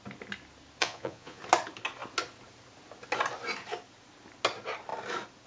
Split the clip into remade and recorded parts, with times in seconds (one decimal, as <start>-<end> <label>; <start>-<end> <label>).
0.0-0.8 recorded; 0.8-1.4 remade; 1.4-5.5 recorded